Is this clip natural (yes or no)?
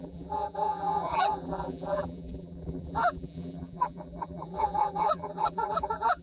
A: no